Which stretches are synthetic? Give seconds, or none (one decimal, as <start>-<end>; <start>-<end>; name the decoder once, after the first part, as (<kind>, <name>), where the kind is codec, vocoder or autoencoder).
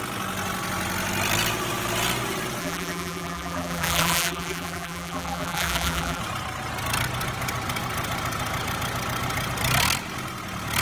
2.6-6.2 (vocoder, BigVGAN v2)